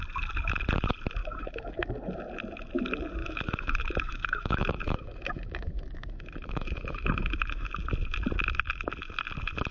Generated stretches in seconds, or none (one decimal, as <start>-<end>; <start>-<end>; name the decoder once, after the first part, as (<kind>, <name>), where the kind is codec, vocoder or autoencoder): 1.2-1.9 (autoencoder, DAC-VAE); 3.2-7.7